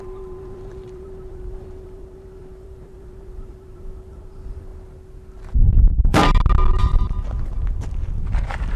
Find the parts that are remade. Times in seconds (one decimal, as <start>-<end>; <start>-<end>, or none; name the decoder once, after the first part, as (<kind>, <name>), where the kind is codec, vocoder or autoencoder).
0.0-4.7 (vocoder, BigVGAN v2); 5.8-6.2; 8.4-8.8